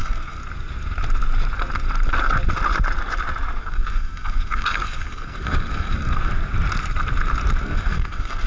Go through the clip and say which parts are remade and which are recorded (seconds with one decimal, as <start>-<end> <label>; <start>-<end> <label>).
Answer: 0.0-0.4 remade; 0.4-3.6 recorded; 3.6-6.3 remade; 6.3-7.6 recorded; 7.6-8.5 remade